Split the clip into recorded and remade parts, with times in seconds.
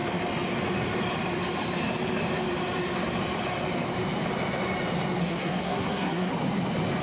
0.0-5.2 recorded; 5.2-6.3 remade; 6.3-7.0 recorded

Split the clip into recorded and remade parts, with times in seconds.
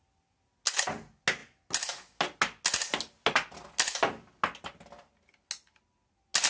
0.0-6.5 recorded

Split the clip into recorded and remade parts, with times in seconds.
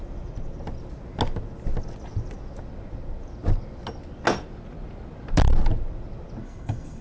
0.0-6.4 recorded; 6.4-7.0 remade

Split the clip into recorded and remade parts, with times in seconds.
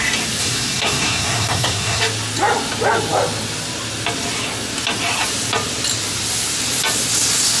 0.0-0.4 recorded; 0.4-2.0 remade; 2.0-7.6 recorded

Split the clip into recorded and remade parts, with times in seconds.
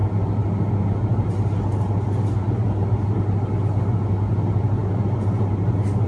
0.0-6.1 recorded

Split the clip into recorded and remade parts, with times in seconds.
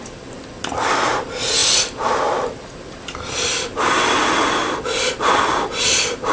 0.0-6.3 recorded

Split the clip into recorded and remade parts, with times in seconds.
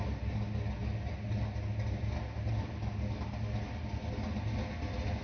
0.0-5.2 recorded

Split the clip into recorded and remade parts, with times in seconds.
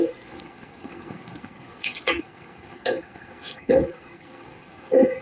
0.0-5.2 remade